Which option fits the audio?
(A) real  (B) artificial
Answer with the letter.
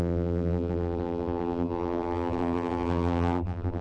B